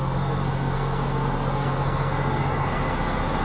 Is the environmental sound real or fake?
fake